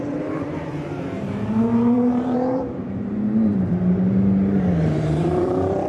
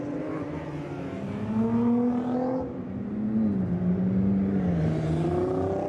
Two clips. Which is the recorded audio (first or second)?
second